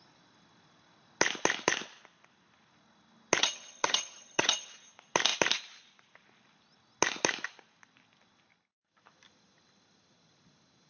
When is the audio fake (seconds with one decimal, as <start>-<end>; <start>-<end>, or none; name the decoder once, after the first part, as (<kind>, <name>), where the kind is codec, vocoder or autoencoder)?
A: 3.4-4.7 (vocoder, HiFi-GAN)